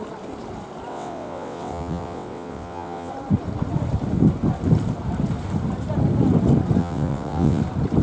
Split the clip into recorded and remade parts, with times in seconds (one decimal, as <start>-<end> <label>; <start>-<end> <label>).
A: 0.0-0.9 recorded; 0.9-3.1 remade; 3.1-6.8 recorded; 6.8-7.6 remade; 7.6-8.0 recorded

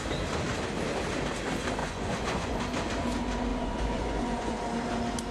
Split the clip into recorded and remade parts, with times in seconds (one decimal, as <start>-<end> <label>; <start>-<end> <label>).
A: 0.0-1.8 recorded; 1.8-2.6 remade; 2.6-3.5 recorded; 3.5-4.6 remade; 4.6-5.3 recorded